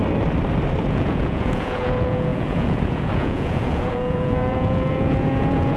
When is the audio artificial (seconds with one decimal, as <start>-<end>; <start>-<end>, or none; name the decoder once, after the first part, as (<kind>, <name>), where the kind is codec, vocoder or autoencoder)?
0.9-5.8 (vocoder, Vocos)

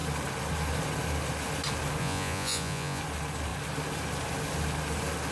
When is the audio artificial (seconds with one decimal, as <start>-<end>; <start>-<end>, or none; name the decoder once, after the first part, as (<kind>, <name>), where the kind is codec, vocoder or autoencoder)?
2.0-3.0 (vocoder, Vocos)

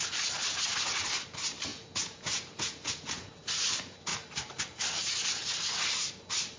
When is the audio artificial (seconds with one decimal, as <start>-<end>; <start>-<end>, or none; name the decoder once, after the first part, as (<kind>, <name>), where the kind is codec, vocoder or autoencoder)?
1.7-3.3 (vocoder, Vocos)

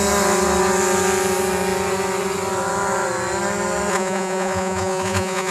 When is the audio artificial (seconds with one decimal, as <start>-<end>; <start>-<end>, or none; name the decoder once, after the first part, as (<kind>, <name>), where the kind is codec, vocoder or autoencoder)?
3.9-5.5 (vocoder, Vocos)

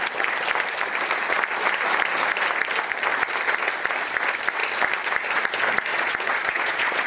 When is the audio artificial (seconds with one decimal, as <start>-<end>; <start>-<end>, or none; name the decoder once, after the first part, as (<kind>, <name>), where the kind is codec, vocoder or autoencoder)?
5.9-7.1 (vocoder, Vocos)